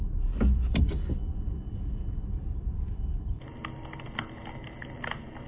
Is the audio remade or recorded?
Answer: recorded